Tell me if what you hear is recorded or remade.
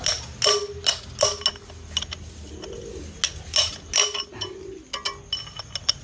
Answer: recorded